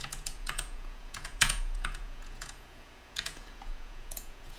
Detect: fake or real fake